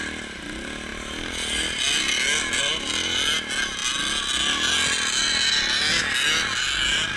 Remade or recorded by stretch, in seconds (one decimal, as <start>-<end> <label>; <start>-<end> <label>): 0.0-7.2 recorded